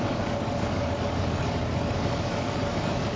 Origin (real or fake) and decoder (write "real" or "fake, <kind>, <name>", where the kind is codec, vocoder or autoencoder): fake, codec, DAC